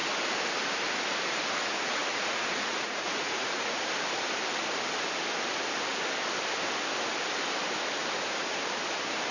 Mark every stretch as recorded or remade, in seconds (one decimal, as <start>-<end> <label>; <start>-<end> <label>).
0.0-1.6 recorded; 1.6-3.9 remade; 3.9-9.3 recorded